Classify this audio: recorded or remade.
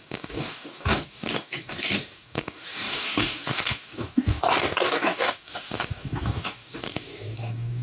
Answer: remade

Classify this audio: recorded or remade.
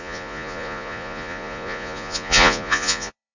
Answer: remade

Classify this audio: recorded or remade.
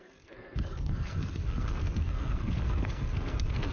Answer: remade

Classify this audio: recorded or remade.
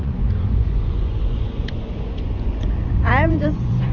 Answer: remade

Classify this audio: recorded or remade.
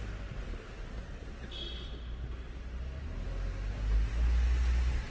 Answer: recorded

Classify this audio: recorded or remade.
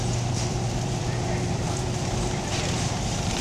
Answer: remade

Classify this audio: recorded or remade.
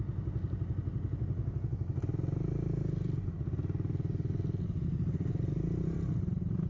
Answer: recorded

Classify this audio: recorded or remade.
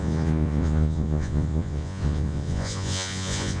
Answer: remade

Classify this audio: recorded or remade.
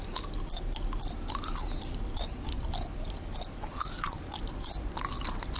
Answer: recorded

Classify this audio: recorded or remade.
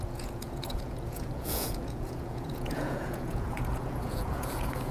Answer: remade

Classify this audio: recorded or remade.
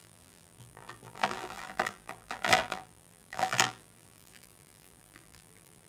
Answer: remade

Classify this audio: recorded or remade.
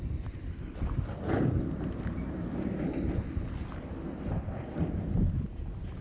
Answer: recorded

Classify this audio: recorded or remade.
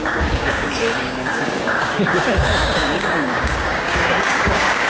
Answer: remade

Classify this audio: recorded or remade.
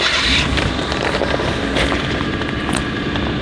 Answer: recorded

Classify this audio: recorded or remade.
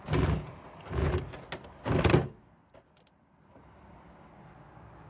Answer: recorded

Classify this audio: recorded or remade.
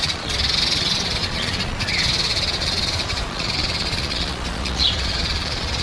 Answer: remade